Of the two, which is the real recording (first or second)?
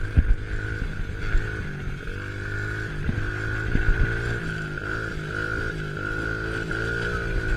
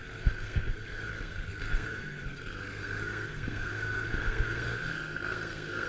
first